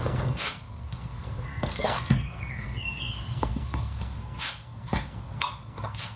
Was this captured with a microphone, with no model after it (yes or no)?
no